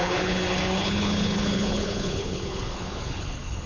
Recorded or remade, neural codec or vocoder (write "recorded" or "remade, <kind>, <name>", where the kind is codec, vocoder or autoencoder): remade, codec, HILCodec